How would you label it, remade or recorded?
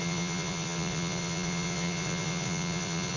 remade